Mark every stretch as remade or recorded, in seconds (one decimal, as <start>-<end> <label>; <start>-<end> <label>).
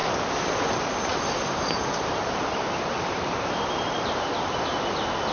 0.0-1.1 recorded; 1.1-4.3 remade; 4.3-5.3 recorded